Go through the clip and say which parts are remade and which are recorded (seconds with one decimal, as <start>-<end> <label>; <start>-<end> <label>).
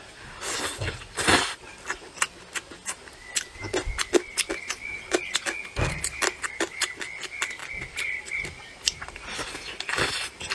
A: 0.0-10.5 recorded